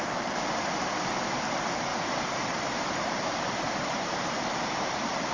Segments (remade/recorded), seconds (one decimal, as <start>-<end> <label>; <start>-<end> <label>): 0.0-1.9 recorded; 1.9-4.4 remade; 4.4-5.3 recorded